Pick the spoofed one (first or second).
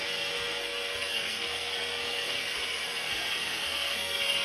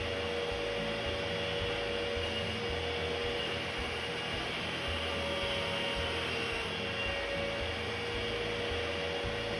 first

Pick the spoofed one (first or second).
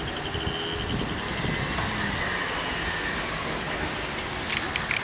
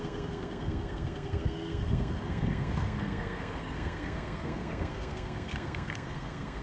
second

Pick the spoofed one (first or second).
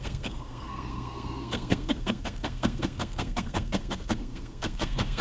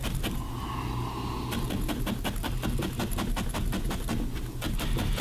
first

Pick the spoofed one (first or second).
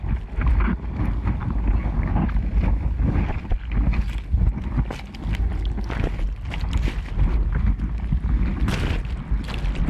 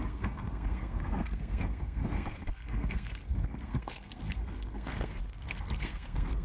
second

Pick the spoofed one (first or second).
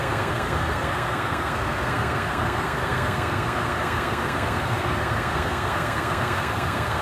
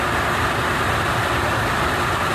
first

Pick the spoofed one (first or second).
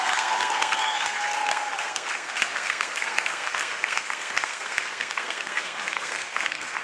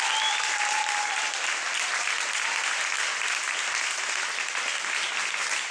first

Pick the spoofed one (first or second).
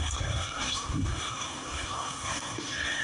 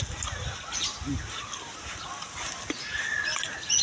first